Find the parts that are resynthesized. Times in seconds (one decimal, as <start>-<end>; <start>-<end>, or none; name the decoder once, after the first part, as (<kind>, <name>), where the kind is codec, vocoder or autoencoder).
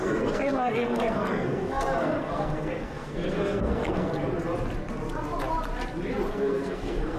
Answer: 0.0-4.1 (codec, SNAC); 6.3-7.2